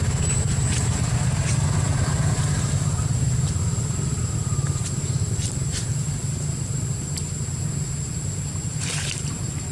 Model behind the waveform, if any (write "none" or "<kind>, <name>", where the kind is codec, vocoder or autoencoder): vocoder, BigVGAN v2